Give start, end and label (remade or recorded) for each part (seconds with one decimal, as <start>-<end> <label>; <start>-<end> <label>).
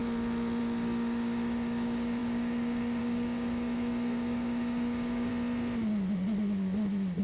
0.0-0.6 recorded; 0.6-5.3 remade; 5.3-7.2 recorded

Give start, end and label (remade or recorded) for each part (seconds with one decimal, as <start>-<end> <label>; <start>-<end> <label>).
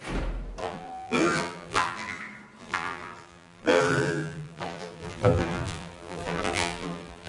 0.0-0.6 recorded; 0.6-2.2 remade; 2.2-2.6 recorded; 2.6-7.3 remade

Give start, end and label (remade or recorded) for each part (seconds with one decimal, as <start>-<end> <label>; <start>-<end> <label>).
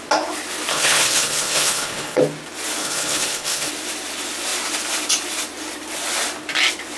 0.0-0.7 recorded; 0.7-2.2 remade; 2.2-2.8 recorded; 2.8-3.7 remade; 3.7-7.0 recorded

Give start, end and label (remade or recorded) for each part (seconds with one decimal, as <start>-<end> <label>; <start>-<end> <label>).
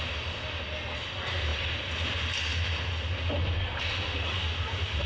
0.0-5.1 recorded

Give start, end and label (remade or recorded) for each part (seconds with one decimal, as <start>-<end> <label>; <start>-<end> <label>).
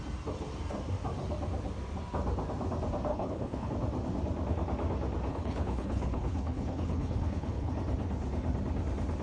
0.0-3.1 recorded; 3.1-3.7 remade; 3.7-5.3 recorded; 5.3-7.7 remade; 7.7-9.2 recorded